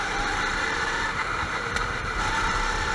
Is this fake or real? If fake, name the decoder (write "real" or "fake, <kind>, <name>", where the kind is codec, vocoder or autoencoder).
fake, vocoder, BigVGAN v2